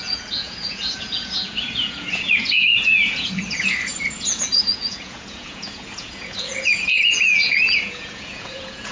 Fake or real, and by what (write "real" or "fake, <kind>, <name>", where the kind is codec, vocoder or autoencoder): fake, vocoder, Vocos